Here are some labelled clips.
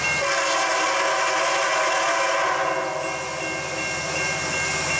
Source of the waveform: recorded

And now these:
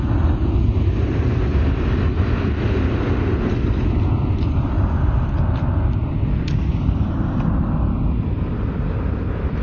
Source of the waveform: recorded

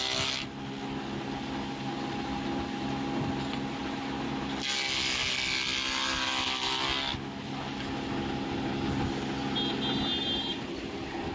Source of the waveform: recorded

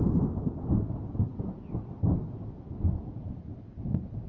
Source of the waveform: recorded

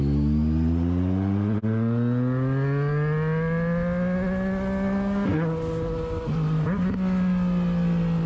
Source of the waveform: recorded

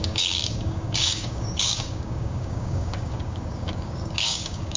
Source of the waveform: remade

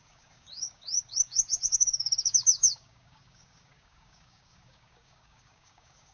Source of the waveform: remade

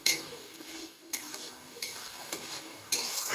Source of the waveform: remade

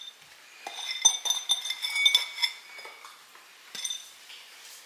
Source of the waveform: recorded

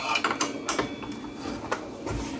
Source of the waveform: recorded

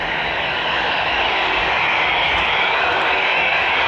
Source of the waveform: remade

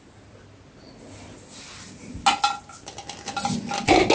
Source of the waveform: recorded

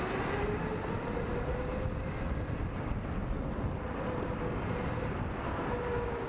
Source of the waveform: recorded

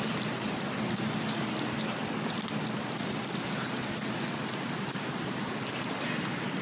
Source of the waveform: recorded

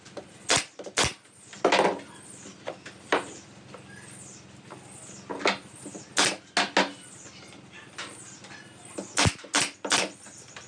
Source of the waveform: recorded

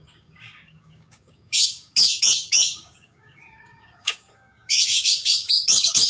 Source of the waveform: remade